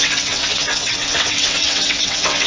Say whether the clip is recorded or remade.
remade